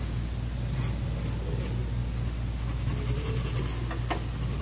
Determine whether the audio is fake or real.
real